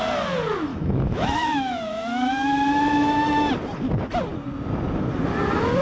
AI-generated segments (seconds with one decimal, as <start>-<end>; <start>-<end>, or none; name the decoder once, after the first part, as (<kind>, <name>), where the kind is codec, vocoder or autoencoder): 0.7-3.5 (autoencoder, DAC-VAE)